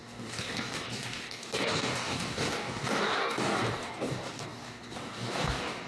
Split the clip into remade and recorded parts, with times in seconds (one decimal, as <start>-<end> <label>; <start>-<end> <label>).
0.0-5.9 remade